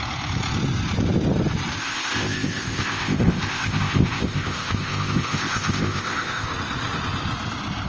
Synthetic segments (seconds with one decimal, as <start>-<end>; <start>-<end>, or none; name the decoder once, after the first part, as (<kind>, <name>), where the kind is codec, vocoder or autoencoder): 1.8-6.5 (codec, ZipCodec)